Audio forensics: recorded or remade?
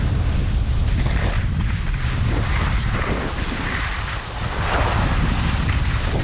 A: recorded